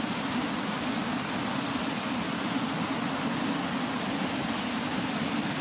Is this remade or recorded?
recorded